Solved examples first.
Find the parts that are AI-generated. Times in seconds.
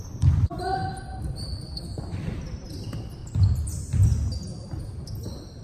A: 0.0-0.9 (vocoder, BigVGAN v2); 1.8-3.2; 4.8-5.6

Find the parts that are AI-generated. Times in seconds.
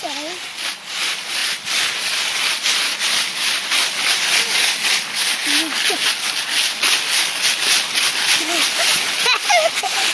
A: none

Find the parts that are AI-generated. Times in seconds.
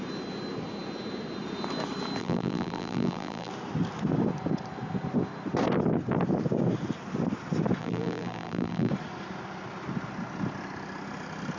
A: 2.2-3.5 (vocoder, BigVGAN v2); 7.8-8.9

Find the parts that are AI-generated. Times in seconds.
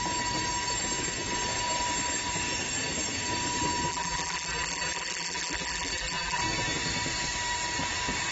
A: 3.9-6.4 (vocoder, BigVGAN v2)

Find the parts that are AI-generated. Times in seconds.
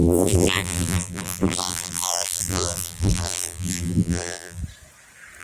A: 0.0-4.6 (vocoder, BigVGAN v2)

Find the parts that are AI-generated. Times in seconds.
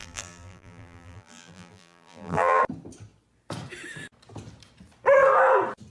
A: 0.0-2.6 (vocoder, BigVGAN v2)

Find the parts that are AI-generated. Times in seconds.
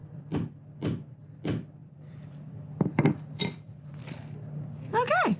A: 0.0-0.6 (vocoder, BigVGAN v2); 1.8-4.2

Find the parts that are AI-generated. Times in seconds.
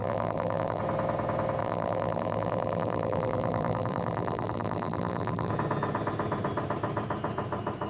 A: 0.0-0.8 (vocoder, BigVGAN v2); 1.6-5.5